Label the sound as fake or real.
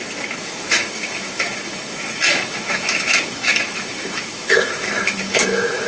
fake